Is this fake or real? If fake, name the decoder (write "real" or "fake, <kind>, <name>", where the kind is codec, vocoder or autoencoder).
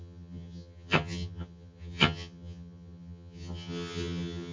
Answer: fake, vocoder, HiFi-GAN